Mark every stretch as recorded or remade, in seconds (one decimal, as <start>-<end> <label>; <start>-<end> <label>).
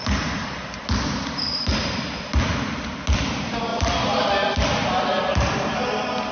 0.0-6.3 recorded